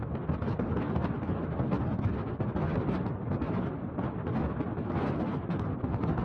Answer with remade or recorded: recorded